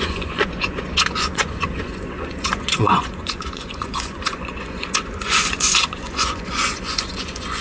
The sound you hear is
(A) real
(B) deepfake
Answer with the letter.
B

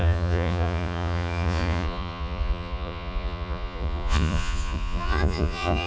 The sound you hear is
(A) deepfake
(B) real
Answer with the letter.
A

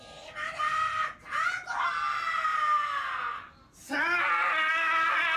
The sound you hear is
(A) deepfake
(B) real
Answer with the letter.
B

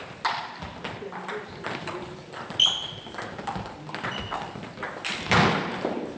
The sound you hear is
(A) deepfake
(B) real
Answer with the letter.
B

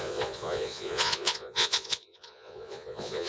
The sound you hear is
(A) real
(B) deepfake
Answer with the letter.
B